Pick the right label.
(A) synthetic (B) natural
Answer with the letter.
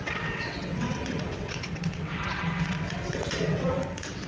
A